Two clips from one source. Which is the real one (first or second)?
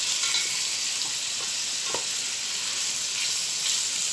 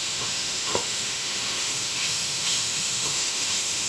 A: first